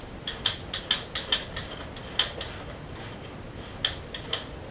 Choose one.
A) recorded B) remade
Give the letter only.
A